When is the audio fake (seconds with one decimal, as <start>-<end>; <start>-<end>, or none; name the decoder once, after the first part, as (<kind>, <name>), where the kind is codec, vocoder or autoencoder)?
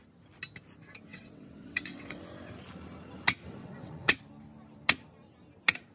1.1-2.2 (vocoder, WaveNeXt); 3.6-4.2